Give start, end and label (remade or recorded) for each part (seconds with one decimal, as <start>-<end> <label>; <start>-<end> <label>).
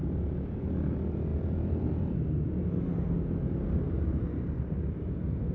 0.0-5.5 recorded